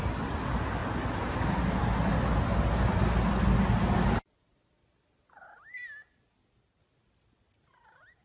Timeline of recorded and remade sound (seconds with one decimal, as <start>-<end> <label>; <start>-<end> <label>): 0.0-8.2 recorded